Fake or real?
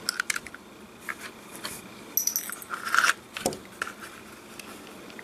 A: real